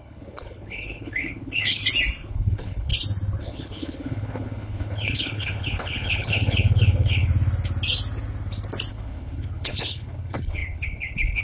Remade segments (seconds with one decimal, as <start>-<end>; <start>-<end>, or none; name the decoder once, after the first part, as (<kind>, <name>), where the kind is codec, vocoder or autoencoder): 0.0-1.8 (codec, HILCodec); 2.3-2.9; 3.4-7.3; 8.9-11.4